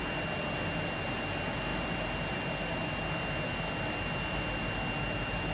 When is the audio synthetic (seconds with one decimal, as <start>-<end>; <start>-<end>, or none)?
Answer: none